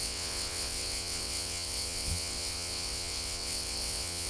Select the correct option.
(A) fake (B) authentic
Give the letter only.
A